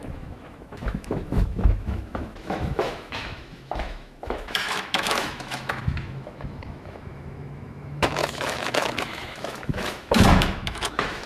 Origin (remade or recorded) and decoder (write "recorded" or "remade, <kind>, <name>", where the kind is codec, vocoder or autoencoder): remade, autoencoder, DAC-VAE